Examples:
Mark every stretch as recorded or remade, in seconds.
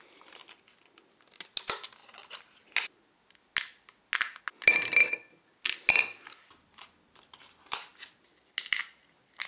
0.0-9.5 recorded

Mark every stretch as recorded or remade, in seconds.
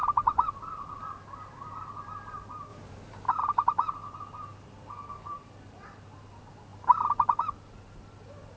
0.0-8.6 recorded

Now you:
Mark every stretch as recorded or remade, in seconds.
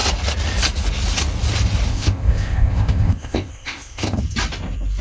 0.0-1.9 recorded; 1.9-4.2 remade; 4.2-5.0 recorded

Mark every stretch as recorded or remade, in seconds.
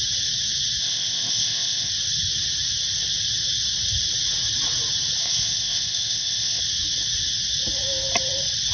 0.0-0.8 recorded; 0.8-1.9 remade; 1.9-5.2 recorded; 5.2-6.6 remade; 6.6-8.7 recorded